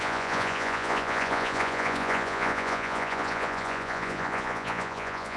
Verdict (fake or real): fake